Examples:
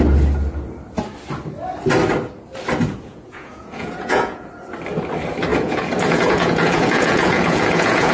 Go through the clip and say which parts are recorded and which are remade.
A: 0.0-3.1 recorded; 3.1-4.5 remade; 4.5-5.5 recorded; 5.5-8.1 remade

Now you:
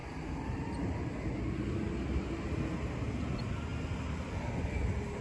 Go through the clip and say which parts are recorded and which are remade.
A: 0.0-5.2 recorded

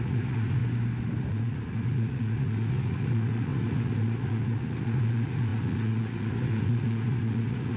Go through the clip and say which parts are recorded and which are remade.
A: 0.0-0.6 remade; 0.6-1.2 recorded; 1.2-7.8 remade

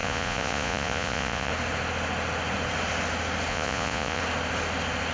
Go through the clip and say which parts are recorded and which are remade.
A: 0.0-1.5 remade; 1.5-3.5 recorded; 3.5-4.2 remade; 4.2-5.1 recorded